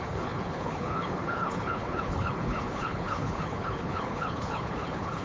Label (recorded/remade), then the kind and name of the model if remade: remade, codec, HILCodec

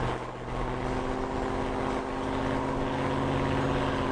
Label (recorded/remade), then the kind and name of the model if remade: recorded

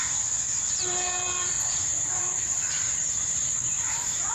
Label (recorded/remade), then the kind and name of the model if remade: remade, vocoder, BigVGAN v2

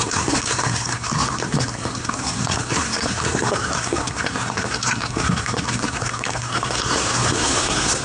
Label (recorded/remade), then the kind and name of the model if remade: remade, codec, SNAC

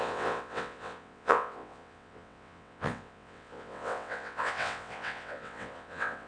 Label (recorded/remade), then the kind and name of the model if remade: remade, vocoder, WaveNeXt